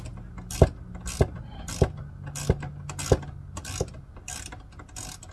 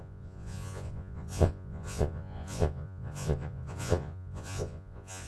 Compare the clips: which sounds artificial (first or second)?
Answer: second